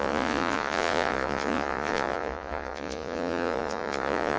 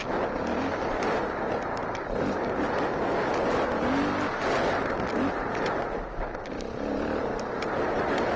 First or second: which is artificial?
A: first